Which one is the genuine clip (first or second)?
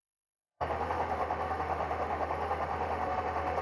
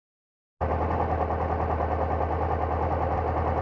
second